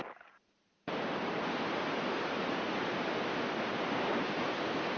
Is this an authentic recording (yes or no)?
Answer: yes